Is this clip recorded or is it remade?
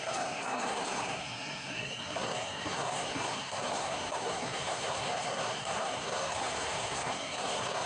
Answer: remade